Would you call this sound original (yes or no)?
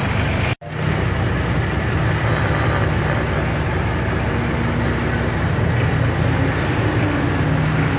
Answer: yes